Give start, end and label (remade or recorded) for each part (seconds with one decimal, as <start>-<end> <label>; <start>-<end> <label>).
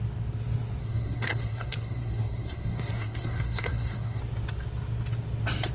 0.0-0.8 recorded; 0.8-4.2 remade; 4.2-5.7 recorded